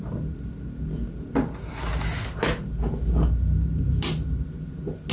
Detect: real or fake real